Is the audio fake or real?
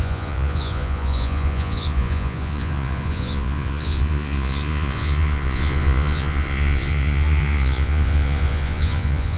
fake